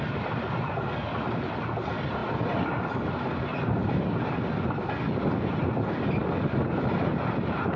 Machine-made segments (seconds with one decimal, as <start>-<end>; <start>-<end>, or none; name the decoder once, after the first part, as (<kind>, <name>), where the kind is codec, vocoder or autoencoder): none